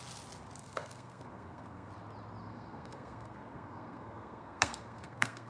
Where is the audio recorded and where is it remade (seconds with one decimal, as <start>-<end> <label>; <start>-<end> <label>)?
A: 0.0-0.6 recorded; 0.6-1.9 remade; 1.9-2.4 recorded; 2.4-5.5 remade